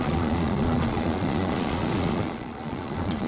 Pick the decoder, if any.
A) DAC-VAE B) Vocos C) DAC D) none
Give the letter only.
B